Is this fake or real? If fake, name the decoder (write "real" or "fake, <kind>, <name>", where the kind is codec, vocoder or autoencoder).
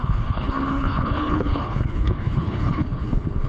fake, codec, HILCodec